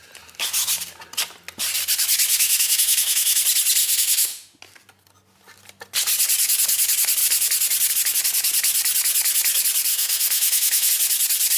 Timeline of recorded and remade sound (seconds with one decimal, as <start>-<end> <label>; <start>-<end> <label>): 0.0-2.3 recorded; 2.3-3.4 remade; 3.4-3.8 recorded; 3.8-4.6 remade; 4.6-9.9 recorded; 9.9-10.9 remade; 10.9-11.6 recorded